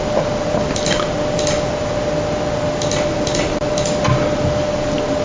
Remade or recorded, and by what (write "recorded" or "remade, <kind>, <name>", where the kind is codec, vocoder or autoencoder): recorded